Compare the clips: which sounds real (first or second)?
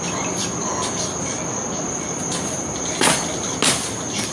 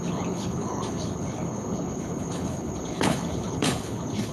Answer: first